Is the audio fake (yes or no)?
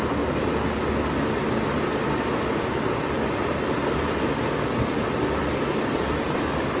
no